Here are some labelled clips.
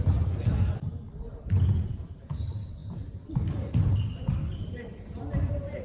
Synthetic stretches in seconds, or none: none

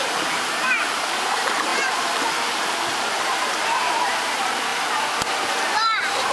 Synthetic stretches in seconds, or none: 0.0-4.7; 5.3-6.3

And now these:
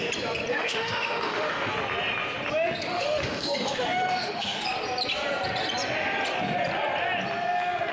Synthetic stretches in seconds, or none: 0.5-1.7; 2.9-4.6

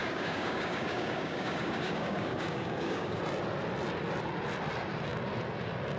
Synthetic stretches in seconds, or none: 0.0-3.2

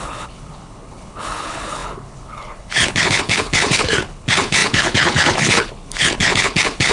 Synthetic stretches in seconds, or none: 0.0-6.9

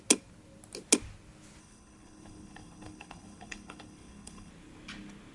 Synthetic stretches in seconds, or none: 1.6-4.5

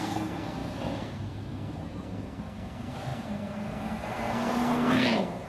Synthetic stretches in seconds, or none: 0.0-5.5

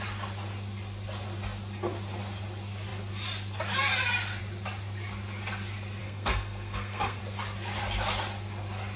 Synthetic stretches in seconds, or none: 6.0-7.2